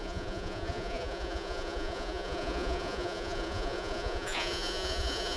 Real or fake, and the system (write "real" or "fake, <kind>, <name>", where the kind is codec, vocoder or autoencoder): fake, vocoder, Vocos